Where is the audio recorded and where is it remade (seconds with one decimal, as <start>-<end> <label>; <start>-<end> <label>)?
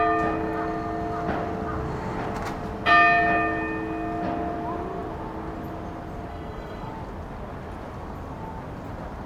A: 0.0-6.3 recorded; 6.3-6.9 remade; 6.9-9.3 recorded